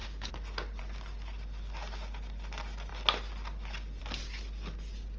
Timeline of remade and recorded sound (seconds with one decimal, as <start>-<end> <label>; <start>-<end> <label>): 0.0-5.2 recorded